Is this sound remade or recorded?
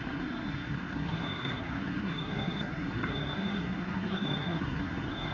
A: remade